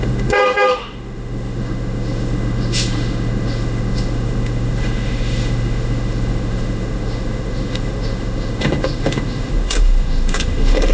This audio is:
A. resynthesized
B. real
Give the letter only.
A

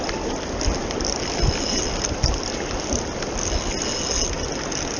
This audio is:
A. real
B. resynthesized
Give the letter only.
A